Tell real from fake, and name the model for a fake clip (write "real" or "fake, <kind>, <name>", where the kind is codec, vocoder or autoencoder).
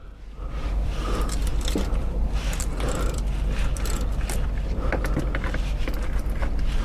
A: real